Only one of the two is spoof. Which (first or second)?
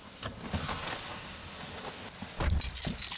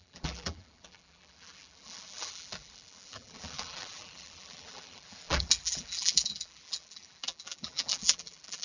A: second